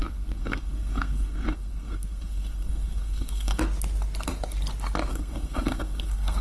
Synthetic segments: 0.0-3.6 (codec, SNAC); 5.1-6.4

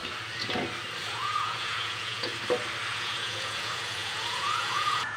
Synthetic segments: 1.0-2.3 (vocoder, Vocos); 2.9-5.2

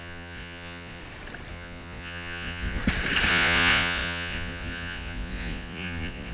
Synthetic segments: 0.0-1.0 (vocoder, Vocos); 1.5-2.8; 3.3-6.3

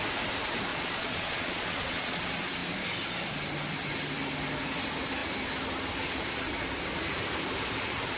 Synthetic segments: 0.7-2.2 (vocoder, Vocos)